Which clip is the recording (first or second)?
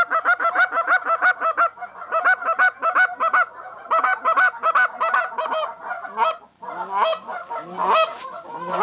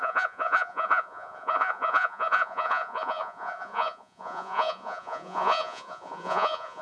first